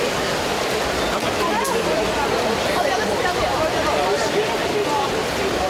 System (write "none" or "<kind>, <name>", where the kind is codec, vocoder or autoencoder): none